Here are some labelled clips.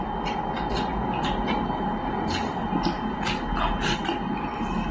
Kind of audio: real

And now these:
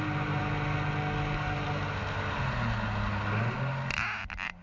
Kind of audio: real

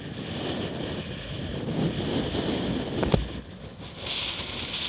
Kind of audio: real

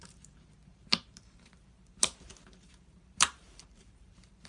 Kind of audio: fake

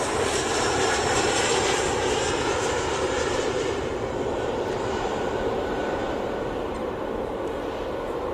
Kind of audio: fake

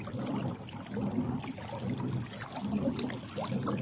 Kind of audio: real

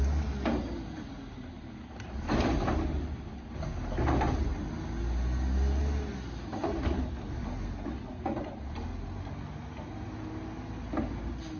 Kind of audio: real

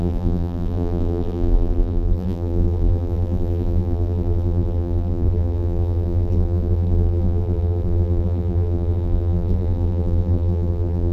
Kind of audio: fake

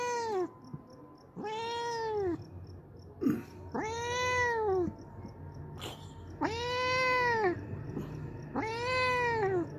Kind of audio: real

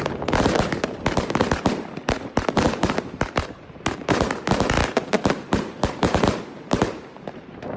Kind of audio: fake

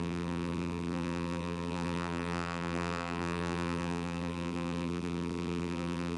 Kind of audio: fake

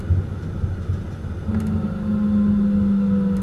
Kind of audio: real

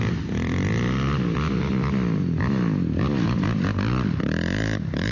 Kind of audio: real